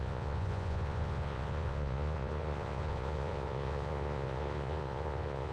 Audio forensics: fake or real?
fake